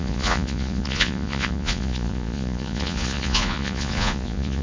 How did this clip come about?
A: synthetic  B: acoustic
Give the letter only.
A